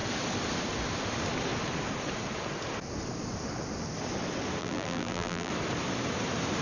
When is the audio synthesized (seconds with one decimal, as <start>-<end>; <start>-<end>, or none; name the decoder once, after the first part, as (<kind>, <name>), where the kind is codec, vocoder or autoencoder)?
4.6-5.5 (vocoder, BigVGAN v2)